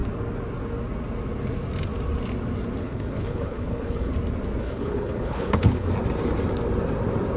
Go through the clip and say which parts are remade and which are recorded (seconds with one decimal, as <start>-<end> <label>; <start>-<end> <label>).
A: 0.0-2.8 recorded; 2.8-4.1 remade; 4.1-4.6 recorded; 4.6-5.9 remade; 5.9-7.4 recorded